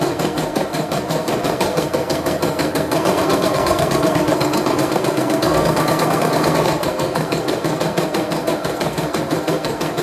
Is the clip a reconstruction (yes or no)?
yes